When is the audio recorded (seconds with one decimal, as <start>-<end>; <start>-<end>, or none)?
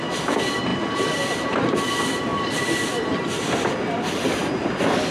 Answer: 0.0-2.3; 3.4-5.1